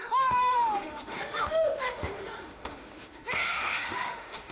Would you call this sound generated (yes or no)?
yes